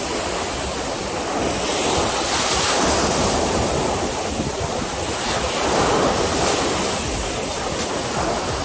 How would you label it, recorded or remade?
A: recorded